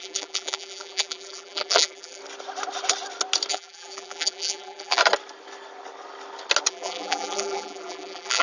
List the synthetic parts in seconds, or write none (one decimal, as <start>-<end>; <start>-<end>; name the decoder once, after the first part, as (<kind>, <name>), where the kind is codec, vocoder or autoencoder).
0.0-2.2 (vocoder, BigVGAN v2); 3.5-5.0; 6.7-8.4